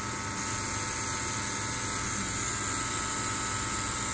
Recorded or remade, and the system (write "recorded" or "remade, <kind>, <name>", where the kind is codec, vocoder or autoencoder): recorded